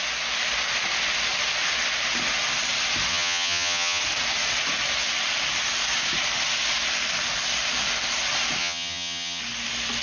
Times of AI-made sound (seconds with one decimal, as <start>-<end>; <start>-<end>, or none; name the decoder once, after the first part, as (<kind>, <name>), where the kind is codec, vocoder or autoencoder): 3.1-4.0 (vocoder, HiFi-GAN); 8.6-9.4